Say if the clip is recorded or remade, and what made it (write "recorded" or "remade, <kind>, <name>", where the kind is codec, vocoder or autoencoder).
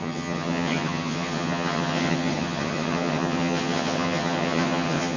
remade, vocoder, HiFi-GAN